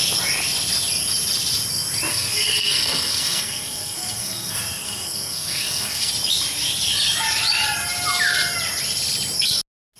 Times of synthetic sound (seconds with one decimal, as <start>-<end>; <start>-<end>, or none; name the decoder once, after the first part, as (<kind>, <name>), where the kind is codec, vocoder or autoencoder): 2.1-6.1 (codec, SNAC)